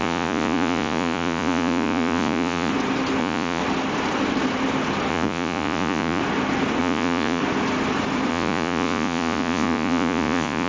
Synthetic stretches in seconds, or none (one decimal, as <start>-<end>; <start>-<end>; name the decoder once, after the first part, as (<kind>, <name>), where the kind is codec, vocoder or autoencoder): 0.0-2.7 (vocoder, Vocos); 3.2-3.6; 5.1-6.2; 6.8-7.4; 8.3-10.7